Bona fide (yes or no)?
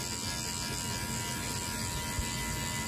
yes